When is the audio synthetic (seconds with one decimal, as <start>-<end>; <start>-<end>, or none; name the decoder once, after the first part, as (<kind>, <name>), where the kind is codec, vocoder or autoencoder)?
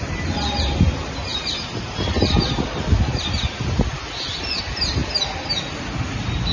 none